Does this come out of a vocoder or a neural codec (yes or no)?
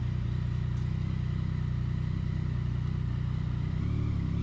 no